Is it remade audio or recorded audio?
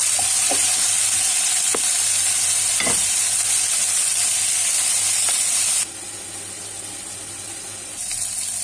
recorded